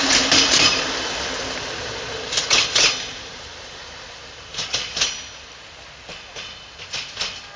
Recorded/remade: recorded